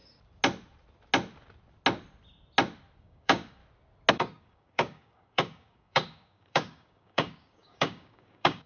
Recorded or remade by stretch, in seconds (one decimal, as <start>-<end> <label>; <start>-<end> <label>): 0.0-3.0 recorded; 3.0-3.6 remade; 3.6-4.1 recorded; 4.1-8.7 remade